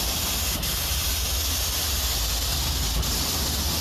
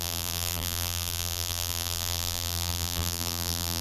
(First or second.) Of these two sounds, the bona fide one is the first